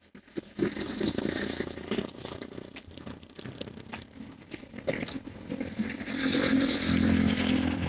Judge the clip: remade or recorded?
remade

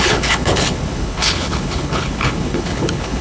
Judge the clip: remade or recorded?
remade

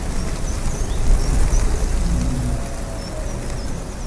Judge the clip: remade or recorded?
recorded